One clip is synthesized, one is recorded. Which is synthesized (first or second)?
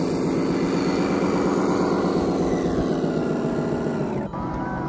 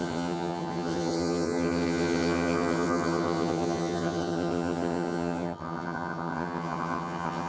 second